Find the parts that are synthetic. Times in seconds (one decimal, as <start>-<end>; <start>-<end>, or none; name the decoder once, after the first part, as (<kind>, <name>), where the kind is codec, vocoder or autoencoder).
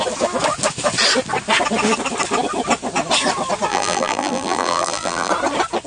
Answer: 3.7-5.3 (vocoder, BigVGAN v2)